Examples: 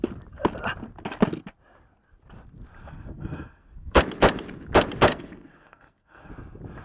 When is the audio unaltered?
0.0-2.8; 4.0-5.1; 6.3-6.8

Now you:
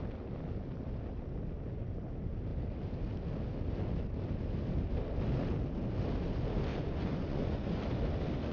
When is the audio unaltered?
0.0-6.7; 7.8-8.5

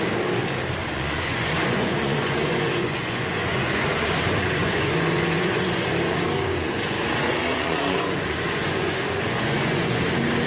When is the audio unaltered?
0.0-0.8; 5.9-6.5; 10.0-10.5